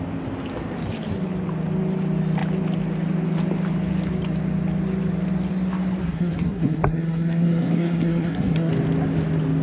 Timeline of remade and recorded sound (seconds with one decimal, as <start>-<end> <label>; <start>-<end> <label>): 0.0-6.0 recorded; 6.0-8.7 remade; 8.7-9.6 recorded